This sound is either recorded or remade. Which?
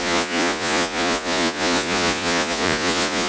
remade